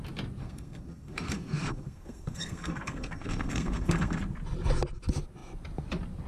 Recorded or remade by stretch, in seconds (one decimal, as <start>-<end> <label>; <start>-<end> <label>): 0.0-0.4 recorded; 0.4-4.2 remade; 4.2-6.3 recorded